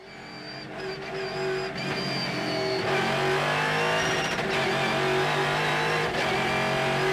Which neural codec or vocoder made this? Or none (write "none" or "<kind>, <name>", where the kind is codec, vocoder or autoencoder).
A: none